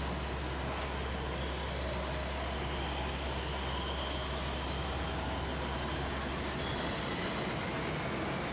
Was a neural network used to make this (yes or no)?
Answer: no